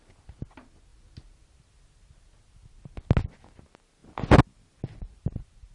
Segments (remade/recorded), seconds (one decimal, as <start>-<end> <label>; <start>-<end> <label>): 0.0-5.7 recorded